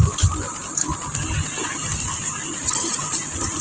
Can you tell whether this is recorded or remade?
recorded